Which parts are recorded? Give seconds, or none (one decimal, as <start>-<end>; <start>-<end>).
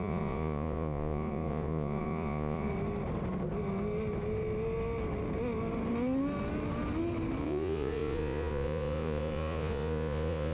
2.7-7.4